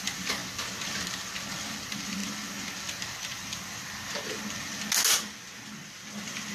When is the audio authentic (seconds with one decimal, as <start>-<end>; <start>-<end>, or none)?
0.4-1.6; 2.2-5.9